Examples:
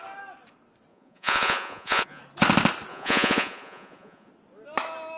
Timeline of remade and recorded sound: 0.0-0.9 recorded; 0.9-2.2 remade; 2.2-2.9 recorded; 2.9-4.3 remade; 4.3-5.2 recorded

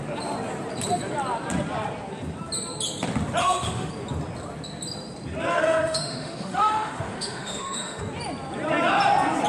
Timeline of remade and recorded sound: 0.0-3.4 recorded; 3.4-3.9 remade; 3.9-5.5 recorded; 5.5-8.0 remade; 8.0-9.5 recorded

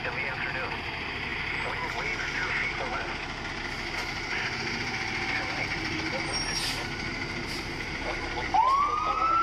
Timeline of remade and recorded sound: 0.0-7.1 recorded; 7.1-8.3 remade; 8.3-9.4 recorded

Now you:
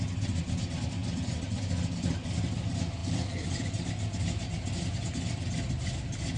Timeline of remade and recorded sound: 0.0-6.4 recorded

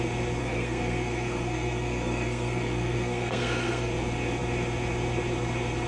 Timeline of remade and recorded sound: 0.0-0.4 recorded; 0.4-3.9 remade; 3.9-5.9 recorded

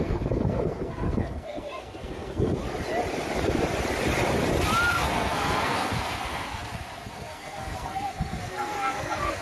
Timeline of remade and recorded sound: 0.0-2.6 remade; 2.6-4.9 recorded; 4.9-9.4 remade

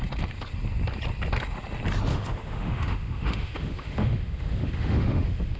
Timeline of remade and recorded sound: 0.0-2.1 recorded; 2.1-5.6 remade